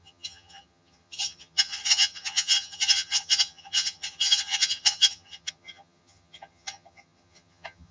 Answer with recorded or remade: remade